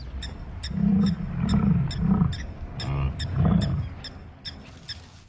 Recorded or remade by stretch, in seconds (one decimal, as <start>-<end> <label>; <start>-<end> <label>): 0.0-5.3 recorded